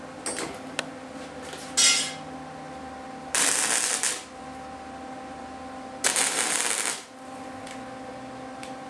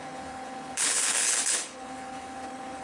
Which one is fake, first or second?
second